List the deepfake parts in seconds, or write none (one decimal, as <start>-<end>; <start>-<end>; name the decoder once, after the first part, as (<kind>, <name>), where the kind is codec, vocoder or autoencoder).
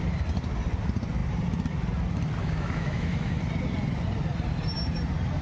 2.4-3.4 (autoencoder, DAC-VAE)